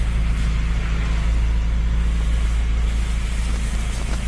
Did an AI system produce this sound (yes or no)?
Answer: no